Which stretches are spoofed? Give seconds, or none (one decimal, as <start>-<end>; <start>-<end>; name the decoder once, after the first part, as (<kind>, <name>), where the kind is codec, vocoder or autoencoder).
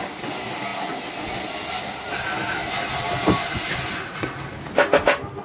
2.6-4.5 (vocoder, BigVGAN v2)